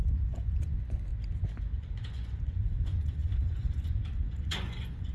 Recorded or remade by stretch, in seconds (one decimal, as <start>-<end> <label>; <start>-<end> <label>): 0.0-1.1 remade; 1.1-1.6 recorded; 1.6-5.1 remade